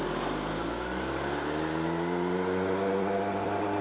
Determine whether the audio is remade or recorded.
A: recorded